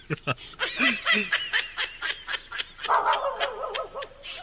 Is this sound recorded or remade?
recorded